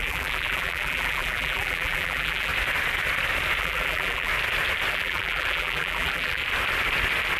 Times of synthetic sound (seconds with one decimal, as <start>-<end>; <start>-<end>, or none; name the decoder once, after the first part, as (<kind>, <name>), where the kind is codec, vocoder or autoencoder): 0.0-2.5 (vocoder, BigVGAN v2); 3.6-4.3; 4.9-6.4